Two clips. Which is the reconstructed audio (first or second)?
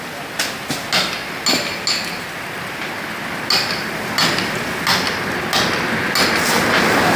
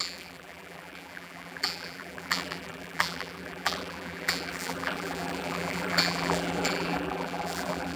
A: second